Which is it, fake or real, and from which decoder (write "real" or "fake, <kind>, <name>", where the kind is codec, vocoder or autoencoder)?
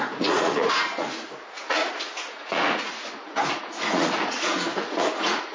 fake, vocoder, Vocos